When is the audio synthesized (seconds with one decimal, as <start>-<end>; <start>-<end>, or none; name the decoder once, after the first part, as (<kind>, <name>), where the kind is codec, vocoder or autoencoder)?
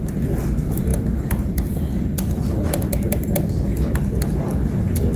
0.9-3.5 (vocoder, BigVGAN v2)